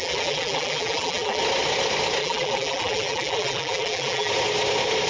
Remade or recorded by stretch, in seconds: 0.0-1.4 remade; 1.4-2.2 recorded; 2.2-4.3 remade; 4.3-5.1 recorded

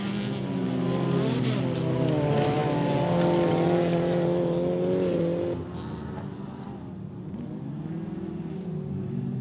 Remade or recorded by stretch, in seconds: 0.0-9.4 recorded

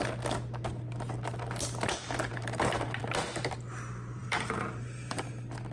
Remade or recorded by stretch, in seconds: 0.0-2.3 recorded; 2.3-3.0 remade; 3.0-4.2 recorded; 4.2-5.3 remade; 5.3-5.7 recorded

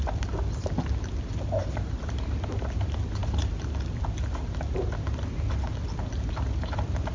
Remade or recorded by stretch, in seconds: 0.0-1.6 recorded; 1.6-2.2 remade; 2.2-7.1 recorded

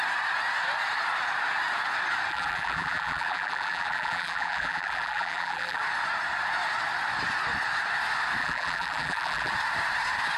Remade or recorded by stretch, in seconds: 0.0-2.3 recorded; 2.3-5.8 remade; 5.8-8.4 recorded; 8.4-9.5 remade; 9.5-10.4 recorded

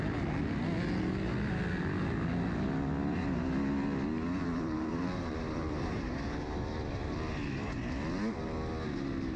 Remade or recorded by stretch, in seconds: 0.0-4.4 recorded; 4.4-7.3 remade; 7.3-9.4 recorded

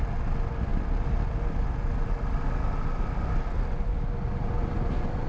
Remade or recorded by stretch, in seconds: 0.0-5.3 recorded